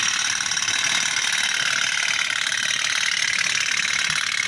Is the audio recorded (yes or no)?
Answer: no